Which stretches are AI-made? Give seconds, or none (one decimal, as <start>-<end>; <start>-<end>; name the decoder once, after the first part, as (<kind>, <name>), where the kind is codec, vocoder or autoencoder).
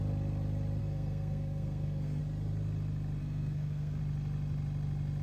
0.8-2.2 (codec, SNAC); 3.2-4.0